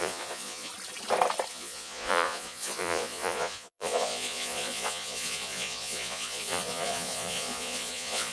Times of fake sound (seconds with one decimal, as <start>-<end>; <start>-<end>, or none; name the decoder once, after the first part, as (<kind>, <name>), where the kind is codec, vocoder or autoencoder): 0.0-0.7 (vocoder, Vocos); 1.5-8.3